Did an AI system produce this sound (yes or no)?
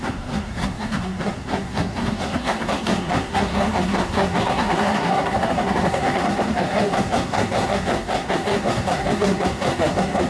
yes